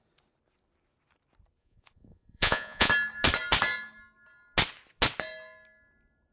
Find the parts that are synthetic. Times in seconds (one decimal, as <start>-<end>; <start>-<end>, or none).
1.6-2.9